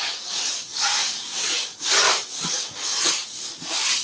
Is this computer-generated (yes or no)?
yes